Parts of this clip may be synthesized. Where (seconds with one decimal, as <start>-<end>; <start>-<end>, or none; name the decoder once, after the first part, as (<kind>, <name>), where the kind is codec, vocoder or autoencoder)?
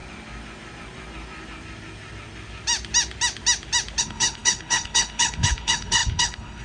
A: 4.0-6.6 (codec, HILCodec)